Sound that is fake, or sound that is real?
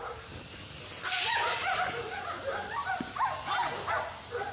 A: real